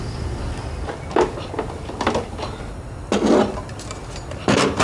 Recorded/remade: recorded